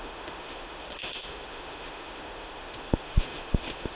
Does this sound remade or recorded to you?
remade